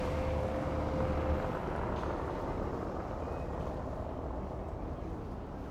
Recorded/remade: recorded